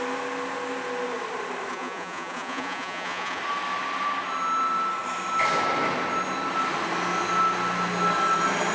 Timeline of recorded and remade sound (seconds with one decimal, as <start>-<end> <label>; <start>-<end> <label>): 0.0-1.7 recorded; 1.7-3.4 remade; 3.4-8.7 recorded